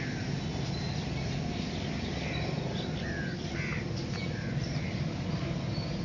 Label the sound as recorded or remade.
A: recorded